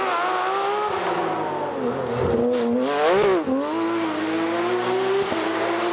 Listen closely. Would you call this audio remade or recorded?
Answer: recorded